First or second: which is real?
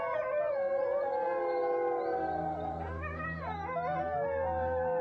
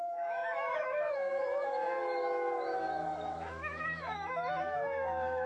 first